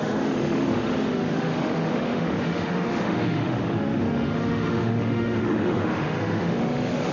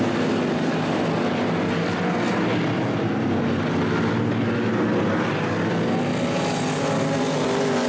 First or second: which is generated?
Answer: first